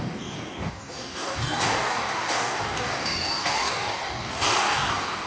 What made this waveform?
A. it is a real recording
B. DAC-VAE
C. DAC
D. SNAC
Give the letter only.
C